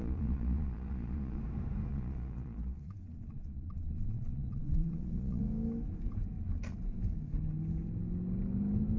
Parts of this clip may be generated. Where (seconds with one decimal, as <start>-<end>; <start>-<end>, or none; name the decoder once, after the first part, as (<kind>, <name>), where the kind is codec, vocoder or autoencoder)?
0.0-1.4 (vocoder, Vocos); 1.9-5.4